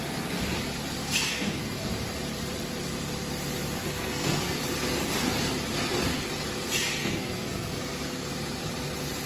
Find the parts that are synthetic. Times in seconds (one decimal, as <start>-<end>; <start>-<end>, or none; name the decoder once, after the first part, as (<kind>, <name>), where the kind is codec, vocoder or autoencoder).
1.0-1.9 (codec, SNAC); 3.8-4.6; 7.0-8.3